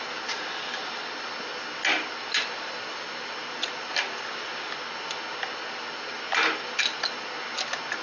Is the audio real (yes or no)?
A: yes